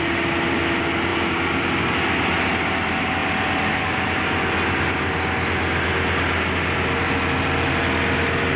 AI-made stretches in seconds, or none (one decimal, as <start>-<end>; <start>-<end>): none